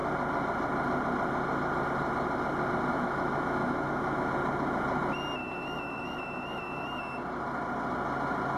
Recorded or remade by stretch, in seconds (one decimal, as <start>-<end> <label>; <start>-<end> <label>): 0.0-2.9 recorded; 2.9-4.3 remade; 4.3-5.4 recorded; 5.4-7.0 remade; 7.0-8.6 recorded